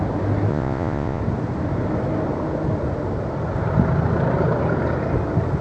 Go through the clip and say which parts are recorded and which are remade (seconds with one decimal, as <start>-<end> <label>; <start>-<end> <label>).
0.0-0.5 recorded; 0.5-1.2 remade; 1.2-5.6 recorded